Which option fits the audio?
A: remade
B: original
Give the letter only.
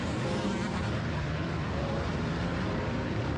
A